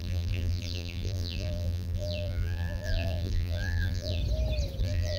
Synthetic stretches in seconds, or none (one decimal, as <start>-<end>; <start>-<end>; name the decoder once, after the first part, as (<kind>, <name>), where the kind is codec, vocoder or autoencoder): 0.0-4.2 (vocoder, BigVGAN v2); 4.8-5.2